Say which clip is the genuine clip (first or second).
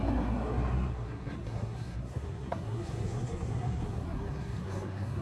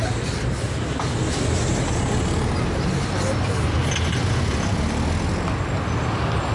second